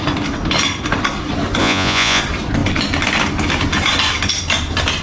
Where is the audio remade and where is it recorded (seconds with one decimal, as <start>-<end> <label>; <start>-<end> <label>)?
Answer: 0.0-1.6 recorded; 1.6-2.2 remade; 2.2-5.0 recorded